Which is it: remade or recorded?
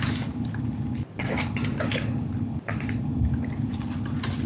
recorded